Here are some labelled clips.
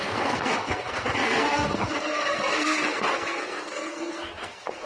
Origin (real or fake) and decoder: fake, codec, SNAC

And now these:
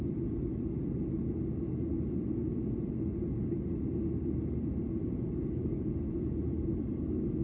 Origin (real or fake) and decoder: real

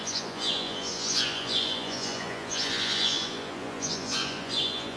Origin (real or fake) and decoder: fake, vocoder, Vocos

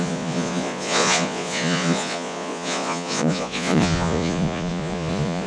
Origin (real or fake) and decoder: fake, vocoder, Vocos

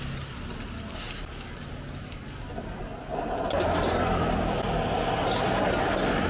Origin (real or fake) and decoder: real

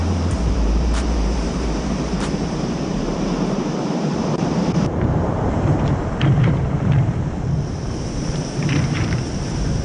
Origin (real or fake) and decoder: fake, vocoder, BigVGAN v2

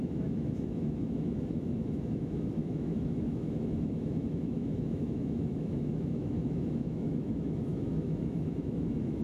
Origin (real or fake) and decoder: fake, autoencoder, DAC-VAE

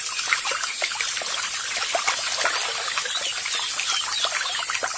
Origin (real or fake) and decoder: real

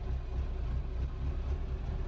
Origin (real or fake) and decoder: real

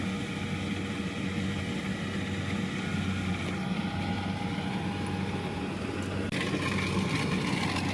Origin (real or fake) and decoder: real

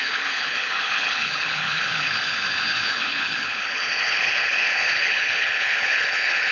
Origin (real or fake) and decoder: fake, codec, HILCodec